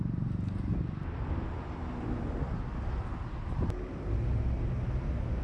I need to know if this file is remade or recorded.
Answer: recorded